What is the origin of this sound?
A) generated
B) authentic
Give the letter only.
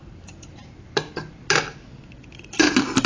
B